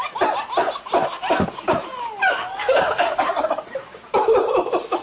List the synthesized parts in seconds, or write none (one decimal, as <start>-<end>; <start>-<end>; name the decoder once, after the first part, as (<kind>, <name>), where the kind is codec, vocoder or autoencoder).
2.6-3.5 (codec, DAC)